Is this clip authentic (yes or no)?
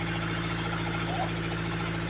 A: yes